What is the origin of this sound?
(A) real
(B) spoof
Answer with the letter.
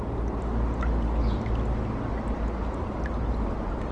A